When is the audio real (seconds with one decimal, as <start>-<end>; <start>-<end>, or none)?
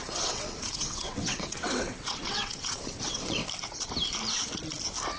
3.4-5.2